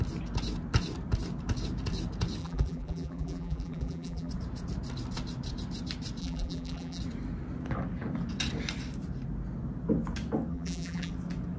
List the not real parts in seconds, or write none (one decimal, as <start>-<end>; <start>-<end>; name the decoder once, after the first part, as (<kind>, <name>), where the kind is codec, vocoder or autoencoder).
2.4-4.3 (vocoder, BigVGAN v2); 6.2-7.0; 10.5-11.1